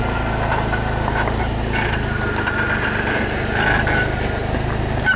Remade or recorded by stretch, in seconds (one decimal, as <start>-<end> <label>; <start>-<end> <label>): 0.0-5.2 recorded